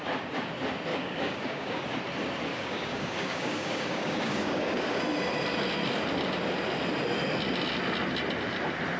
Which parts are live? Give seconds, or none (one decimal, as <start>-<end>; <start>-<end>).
0.0-0.9; 1.8-2.5; 5.0-9.0